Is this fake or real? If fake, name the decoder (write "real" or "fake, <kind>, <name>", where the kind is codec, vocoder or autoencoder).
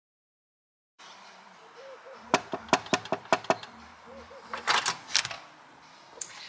fake, vocoder, BigVGAN v2